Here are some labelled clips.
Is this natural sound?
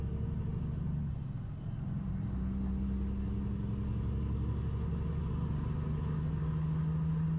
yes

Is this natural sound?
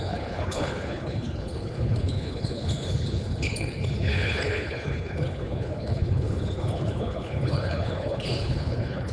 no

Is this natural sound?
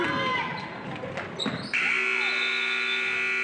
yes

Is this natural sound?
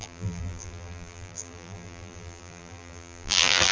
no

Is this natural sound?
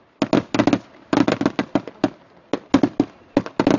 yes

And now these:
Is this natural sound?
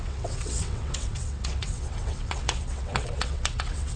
no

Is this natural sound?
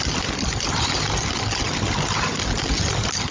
yes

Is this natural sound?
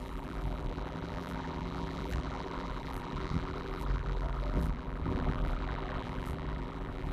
no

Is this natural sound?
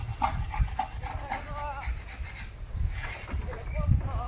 yes